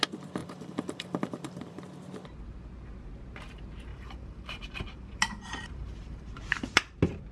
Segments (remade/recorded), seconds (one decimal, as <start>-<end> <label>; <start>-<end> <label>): 0.0-0.4 recorded; 0.4-1.8 remade; 1.8-3.9 recorded; 3.9-6.4 remade; 6.4-7.3 recorded